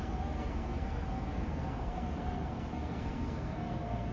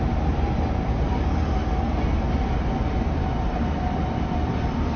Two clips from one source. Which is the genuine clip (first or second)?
second